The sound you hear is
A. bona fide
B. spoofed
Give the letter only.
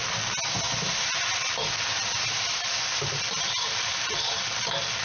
A